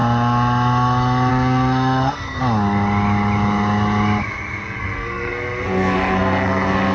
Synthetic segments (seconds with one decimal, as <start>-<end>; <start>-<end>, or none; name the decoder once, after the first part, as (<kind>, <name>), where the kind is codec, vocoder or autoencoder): 1.3-2.4 (codec, SNAC); 4.8-6.9